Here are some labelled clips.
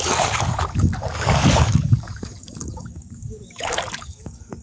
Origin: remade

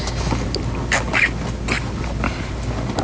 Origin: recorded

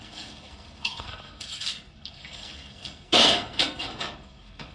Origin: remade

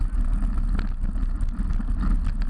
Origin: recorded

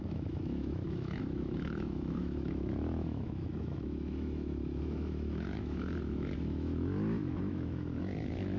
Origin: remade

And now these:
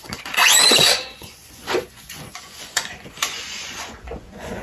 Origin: remade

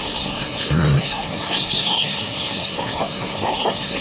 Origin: remade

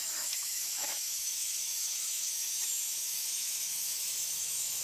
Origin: remade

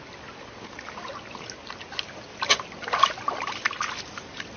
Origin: recorded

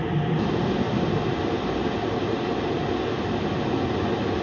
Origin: remade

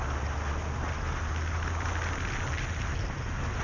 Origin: recorded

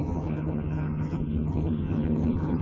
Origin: remade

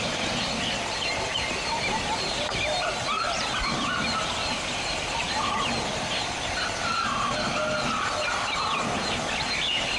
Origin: recorded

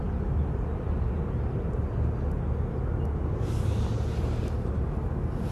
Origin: recorded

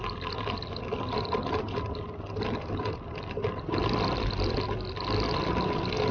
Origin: recorded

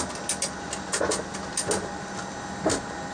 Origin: recorded